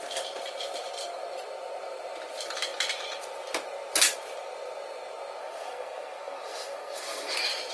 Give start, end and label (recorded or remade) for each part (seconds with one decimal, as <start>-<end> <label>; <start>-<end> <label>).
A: 0.0-5.4 recorded; 5.4-7.3 remade; 7.3-7.7 recorded